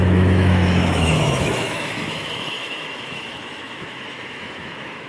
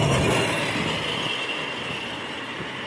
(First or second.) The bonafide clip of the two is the second